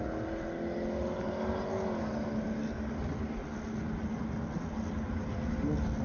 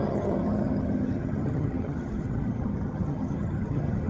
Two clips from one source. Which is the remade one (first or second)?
second